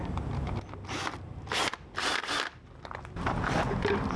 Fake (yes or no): no